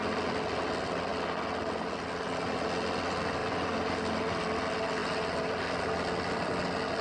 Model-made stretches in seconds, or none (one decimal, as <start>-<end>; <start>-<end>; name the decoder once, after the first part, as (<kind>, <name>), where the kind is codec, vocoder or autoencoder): none